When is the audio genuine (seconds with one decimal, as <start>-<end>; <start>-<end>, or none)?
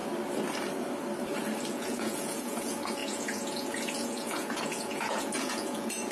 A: 0.0-1.7